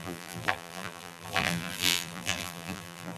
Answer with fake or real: fake